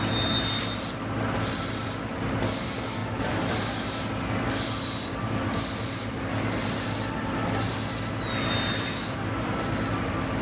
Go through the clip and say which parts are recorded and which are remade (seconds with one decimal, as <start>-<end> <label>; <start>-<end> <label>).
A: 0.0-10.4 recorded